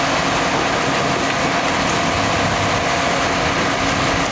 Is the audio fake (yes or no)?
no